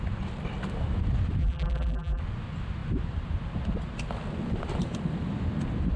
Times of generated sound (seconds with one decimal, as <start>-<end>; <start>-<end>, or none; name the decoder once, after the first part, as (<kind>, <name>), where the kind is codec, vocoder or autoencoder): 1.4-2.2 (vocoder, BigVGAN v2)